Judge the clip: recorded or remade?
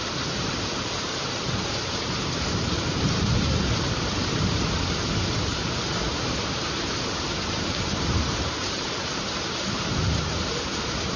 remade